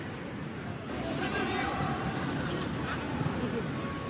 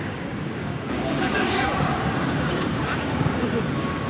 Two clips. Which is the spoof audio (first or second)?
second